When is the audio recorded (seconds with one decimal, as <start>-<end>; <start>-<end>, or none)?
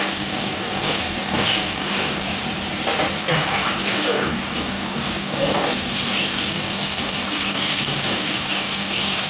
2.4-3.2